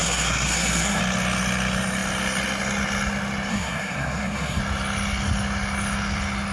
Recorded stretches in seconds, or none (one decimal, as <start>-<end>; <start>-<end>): 1.0-3.5; 4.6-6.5